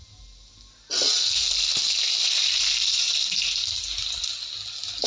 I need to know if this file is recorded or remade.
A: recorded